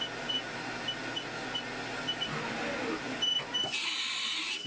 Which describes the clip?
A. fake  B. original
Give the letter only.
B